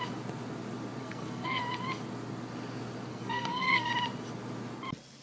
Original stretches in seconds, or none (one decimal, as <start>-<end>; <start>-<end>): 0.0-1.0; 1.6-3.1; 3.9-5.2